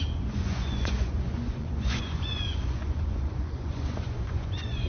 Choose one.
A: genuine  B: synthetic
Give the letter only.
B